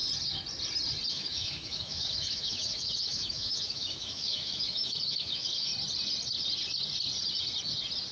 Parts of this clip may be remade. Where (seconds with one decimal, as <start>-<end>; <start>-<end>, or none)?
1.1-5.7